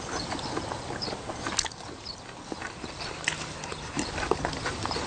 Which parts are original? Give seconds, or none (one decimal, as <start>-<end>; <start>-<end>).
0.0-5.1